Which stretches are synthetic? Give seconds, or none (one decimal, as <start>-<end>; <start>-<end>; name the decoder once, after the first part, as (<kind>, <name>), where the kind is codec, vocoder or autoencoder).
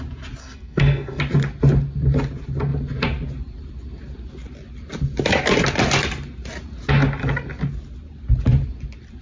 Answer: 0.4-1.2 (codec, SNAC)